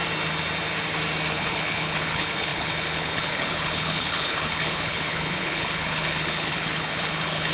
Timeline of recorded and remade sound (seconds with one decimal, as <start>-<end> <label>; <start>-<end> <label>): 0.0-1.3 recorded; 1.3-7.5 remade